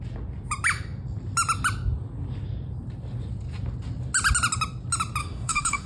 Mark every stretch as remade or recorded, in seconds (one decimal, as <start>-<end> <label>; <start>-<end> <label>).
0.0-5.2 recorded; 5.2-5.9 remade